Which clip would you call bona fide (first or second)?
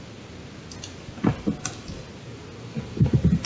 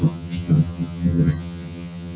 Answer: first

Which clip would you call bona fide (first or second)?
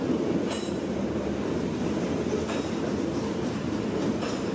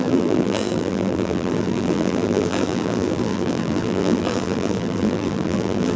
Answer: first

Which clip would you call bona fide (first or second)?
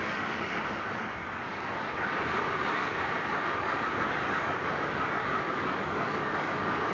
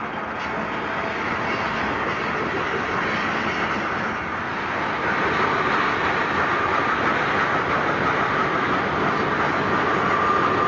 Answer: second